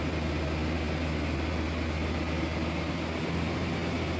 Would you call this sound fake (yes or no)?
no